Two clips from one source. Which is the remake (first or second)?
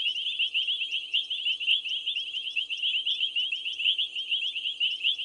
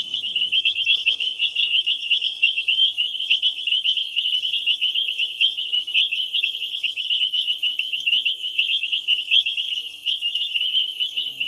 second